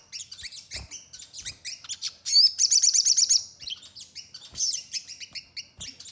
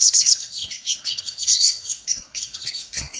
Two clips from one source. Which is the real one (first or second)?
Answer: first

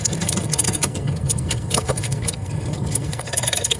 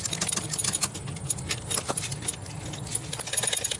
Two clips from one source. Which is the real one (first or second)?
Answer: second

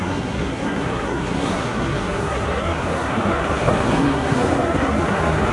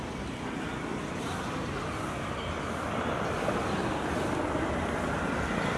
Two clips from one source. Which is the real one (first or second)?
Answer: second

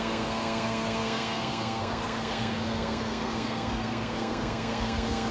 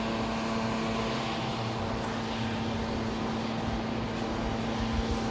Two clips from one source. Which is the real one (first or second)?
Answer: second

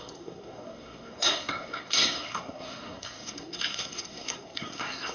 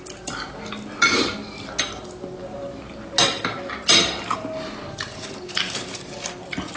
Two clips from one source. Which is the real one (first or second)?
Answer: second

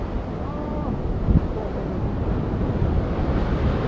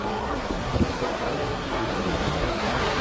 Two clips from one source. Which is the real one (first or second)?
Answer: first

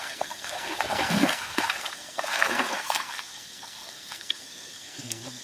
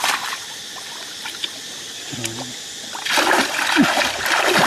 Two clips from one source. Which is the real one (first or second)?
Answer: second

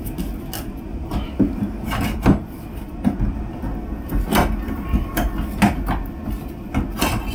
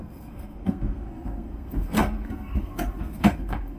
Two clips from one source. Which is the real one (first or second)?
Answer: first